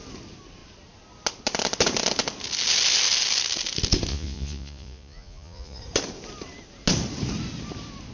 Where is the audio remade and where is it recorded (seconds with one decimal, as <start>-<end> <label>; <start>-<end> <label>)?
0.0-4.1 recorded; 4.1-5.8 remade; 5.8-8.1 recorded